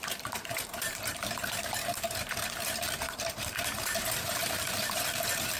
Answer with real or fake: fake